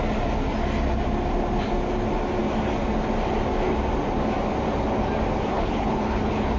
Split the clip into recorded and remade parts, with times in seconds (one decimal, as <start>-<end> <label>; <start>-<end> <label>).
0.0-5.5 recorded; 5.5-6.6 remade